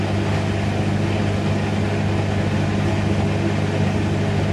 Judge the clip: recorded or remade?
recorded